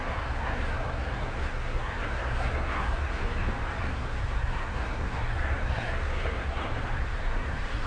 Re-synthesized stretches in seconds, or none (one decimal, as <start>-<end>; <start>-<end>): 0.0-3.2; 3.8-7.9